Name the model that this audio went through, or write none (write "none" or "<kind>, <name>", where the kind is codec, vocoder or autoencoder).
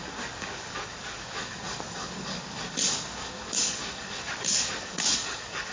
codec, DAC